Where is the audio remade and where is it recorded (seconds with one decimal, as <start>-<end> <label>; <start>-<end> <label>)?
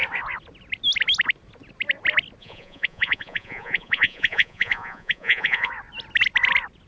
0.0-2.4 recorded; 2.4-5.7 remade; 5.7-6.9 recorded